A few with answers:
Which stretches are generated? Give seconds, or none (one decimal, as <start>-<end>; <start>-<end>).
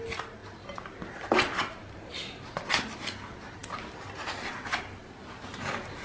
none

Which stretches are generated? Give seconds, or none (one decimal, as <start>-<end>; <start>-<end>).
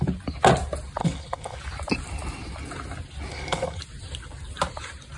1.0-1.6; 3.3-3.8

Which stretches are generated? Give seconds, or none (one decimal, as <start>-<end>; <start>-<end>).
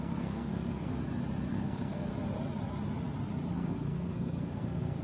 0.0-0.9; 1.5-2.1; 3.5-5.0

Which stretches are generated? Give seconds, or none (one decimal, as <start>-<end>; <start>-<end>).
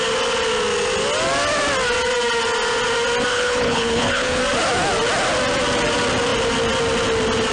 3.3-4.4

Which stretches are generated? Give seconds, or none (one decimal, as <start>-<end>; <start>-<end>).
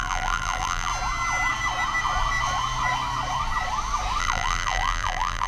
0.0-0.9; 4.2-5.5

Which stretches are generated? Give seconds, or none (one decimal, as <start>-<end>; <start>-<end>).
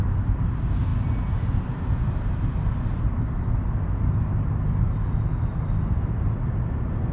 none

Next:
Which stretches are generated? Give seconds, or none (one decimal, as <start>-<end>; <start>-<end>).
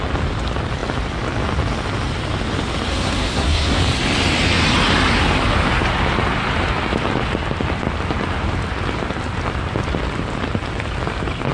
2.9-3.8